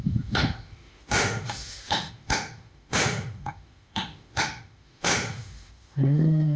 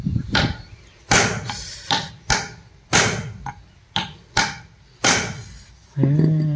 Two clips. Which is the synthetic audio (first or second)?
first